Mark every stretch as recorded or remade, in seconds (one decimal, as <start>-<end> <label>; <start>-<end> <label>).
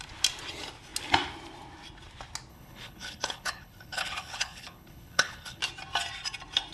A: 0.0-2.5 recorded; 2.5-5.6 remade; 5.6-6.7 recorded